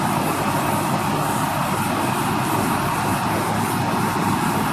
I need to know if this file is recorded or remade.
remade